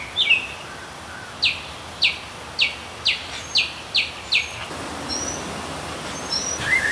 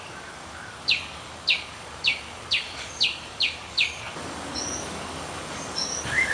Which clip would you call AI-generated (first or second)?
second